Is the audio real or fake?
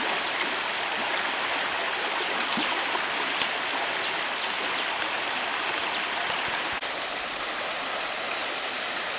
real